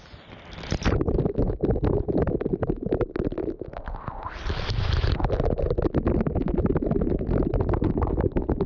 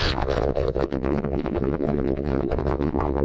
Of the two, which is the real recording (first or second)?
first